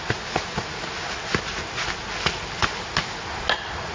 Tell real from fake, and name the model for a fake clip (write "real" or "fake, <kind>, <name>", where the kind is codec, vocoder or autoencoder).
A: real